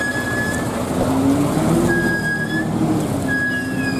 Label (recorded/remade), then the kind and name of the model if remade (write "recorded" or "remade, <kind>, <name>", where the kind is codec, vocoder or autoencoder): recorded